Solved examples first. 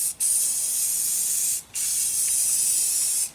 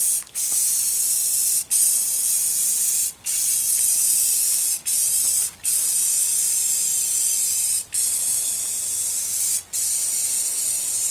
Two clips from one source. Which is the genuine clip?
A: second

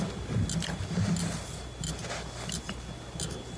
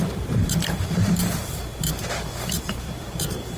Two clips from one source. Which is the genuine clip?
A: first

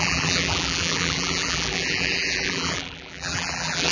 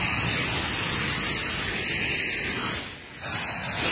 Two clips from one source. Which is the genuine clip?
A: second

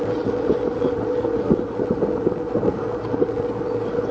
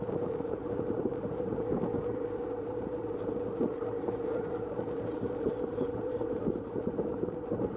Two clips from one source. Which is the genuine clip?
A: first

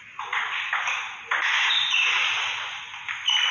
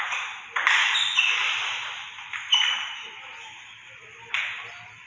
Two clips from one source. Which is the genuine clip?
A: first